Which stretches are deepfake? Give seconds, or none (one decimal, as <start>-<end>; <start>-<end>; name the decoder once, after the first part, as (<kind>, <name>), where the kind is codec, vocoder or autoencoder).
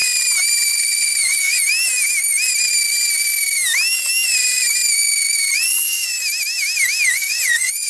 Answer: 0.7-1.7 (vocoder, Vocos); 5.5-6.1; 7.1-7.9